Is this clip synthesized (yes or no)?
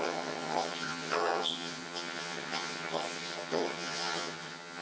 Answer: yes